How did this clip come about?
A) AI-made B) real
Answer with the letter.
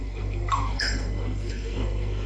A